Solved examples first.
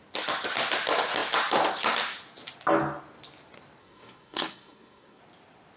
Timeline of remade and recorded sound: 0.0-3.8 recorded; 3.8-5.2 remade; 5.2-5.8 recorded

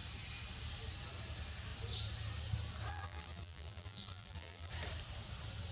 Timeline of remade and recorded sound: 0.0-2.9 recorded; 2.9-4.7 remade; 4.7-5.7 recorded

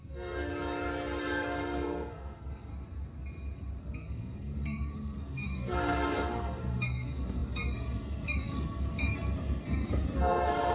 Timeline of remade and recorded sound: 0.0-0.5 remade; 0.5-1.2 recorded; 1.2-2.7 remade; 2.7-3.8 recorded; 3.8-10.7 remade

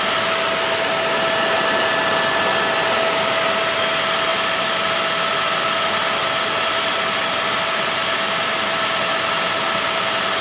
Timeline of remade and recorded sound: 0.0-10.4 recorded

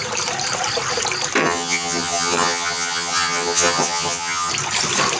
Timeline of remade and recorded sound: 0.0-1.4 recorded; 1.4-4.5 remade; 4.5-5.2 recorded

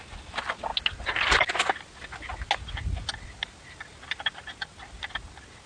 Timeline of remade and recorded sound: 0.0-5.7 recorded